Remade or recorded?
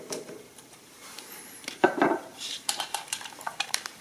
remade